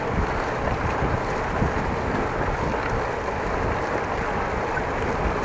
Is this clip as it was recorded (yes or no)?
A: yes